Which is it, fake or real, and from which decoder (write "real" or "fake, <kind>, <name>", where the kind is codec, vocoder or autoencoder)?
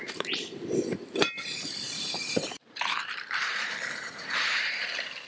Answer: fake, vocoder, BigVGAN v2